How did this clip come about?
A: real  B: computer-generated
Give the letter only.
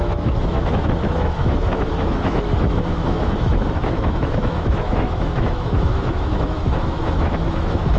B